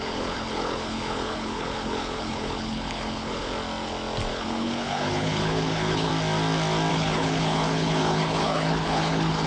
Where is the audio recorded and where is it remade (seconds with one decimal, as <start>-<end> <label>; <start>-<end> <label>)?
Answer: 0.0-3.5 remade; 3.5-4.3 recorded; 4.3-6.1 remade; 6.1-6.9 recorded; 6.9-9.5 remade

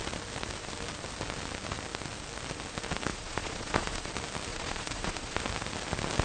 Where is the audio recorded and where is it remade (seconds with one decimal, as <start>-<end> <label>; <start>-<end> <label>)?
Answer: 0.0-3.1 recorded; 3.1-4.1 remade; 4.1-4.5 recorded; 4.5-5.4 remade; 5.4-6.2 recorded

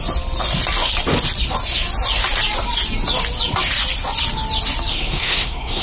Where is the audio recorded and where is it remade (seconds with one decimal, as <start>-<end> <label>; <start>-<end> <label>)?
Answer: 0.0-4.9 recorded; 4.9-5.8 remade

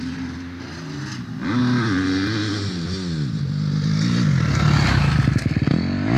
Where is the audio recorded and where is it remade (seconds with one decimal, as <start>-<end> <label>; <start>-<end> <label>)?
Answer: 0.0-6.2 recorded

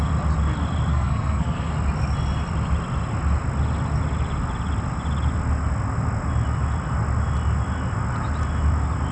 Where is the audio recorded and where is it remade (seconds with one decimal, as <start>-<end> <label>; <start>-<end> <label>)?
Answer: 0.0-0.9 recorded; 0.9-1.7 remade; 1.7-9.1 recorded

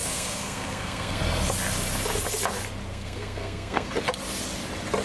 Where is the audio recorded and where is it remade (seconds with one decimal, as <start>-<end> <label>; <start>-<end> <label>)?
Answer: 0.0-1.2 remade; 1.2-2.9 recorded; 2.9-3.9 remade; 3.9-5.0 recorded

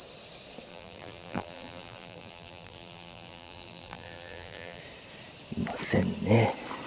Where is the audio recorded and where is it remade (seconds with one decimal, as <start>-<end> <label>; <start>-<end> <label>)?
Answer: 0.0-0.7 recorded; 0.7-4.8 remade; 4.8-6.9 recorded

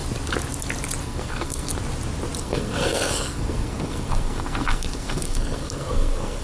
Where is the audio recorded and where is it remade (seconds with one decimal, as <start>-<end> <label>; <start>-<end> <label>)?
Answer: 0.0-1.0 recorded; 1.0-1.7 remade; 1.7-2.4 recorded; 2.4-6.4 remade